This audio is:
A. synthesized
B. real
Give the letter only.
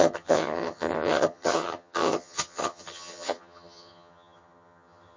A